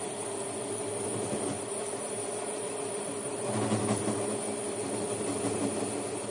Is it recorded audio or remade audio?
recorded